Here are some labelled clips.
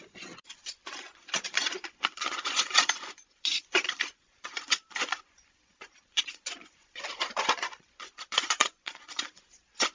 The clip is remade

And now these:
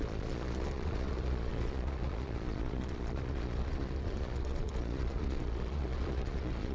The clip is remade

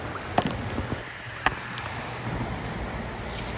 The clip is recorded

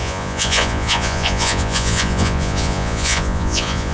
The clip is remade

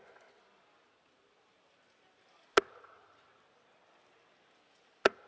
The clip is recorded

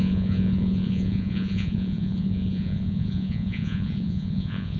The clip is remade